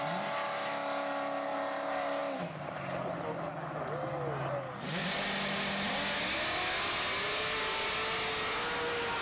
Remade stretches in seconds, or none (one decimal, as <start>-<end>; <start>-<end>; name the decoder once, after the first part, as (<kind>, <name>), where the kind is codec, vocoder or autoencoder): none